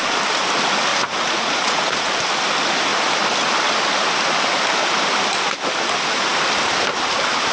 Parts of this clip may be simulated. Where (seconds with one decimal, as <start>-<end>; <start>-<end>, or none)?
0.9-2.1